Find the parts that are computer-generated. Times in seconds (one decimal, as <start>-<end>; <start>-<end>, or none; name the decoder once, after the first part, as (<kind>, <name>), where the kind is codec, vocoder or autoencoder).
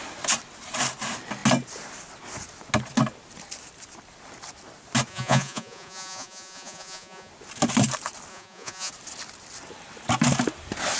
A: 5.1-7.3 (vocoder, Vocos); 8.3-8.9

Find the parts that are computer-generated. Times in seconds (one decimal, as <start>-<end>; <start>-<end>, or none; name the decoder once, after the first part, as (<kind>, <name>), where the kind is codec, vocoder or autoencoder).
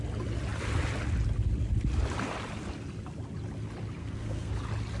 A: 4.0-4.5 (codec, SNAC)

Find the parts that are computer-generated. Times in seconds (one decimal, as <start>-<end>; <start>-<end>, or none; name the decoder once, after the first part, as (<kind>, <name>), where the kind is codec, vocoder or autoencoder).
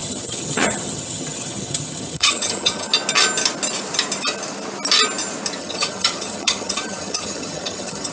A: 0.0-2.9 (vocoder, HiFi-GAN); 5.6-8.1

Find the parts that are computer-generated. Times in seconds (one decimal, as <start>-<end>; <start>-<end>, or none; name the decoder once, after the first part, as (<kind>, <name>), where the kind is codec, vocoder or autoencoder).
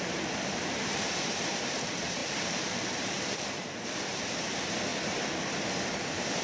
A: 0.0-4.9 (vocoder, BigVGAN v2); 5.7-6.4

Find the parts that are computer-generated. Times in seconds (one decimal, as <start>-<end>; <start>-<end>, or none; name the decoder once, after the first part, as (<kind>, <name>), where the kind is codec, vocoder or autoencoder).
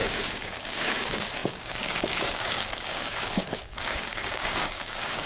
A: 0.0-5.3 (codec, DAC)